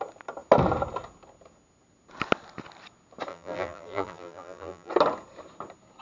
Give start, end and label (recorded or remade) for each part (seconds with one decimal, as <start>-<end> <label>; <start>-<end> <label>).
0.0-3.3 recorded; 3.3-4.9 remade; 4.9-6.0 recorded